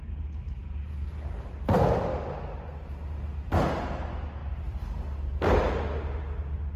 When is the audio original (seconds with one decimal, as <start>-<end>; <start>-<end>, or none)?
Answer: 0.0-4.4; 5.8-6.8